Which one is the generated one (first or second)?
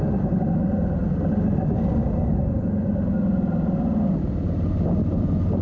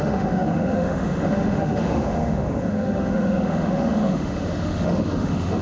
second